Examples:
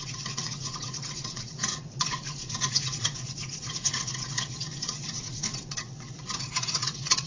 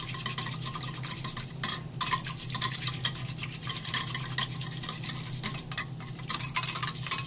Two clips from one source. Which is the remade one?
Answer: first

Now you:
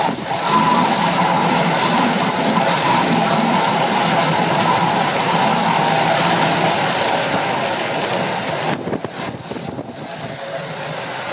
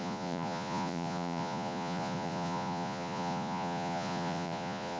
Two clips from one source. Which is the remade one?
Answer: second